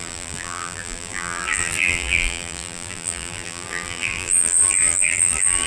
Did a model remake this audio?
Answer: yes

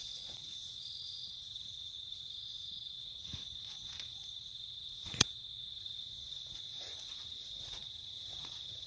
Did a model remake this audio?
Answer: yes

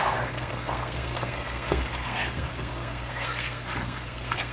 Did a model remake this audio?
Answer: yes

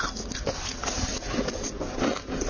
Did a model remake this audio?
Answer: no